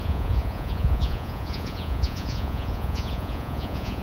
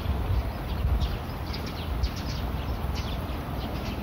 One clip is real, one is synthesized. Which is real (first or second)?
second